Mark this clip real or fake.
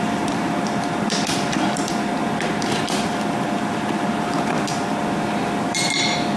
fake